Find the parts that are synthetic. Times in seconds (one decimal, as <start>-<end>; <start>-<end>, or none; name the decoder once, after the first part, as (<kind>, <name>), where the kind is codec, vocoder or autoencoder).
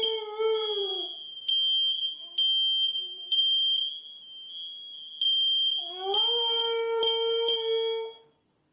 2.9-3.4 (vocoder, BigVGAN v2)